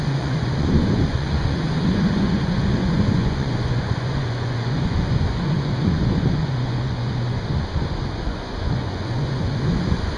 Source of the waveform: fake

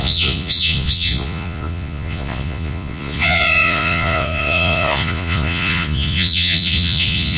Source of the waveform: fake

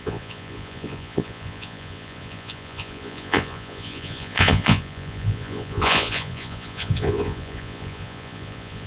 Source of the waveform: fake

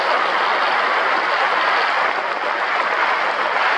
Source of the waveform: real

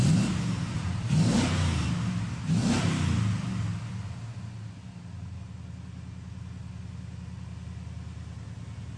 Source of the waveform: real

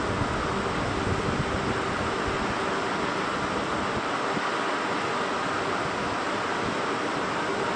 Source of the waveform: real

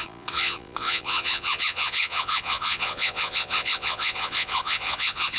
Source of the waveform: fake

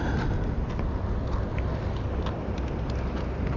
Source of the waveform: real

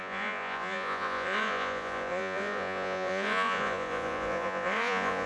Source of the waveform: fake